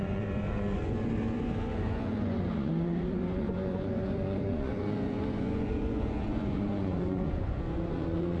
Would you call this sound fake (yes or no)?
yes